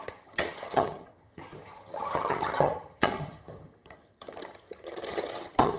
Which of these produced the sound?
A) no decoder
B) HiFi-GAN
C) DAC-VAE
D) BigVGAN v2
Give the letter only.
B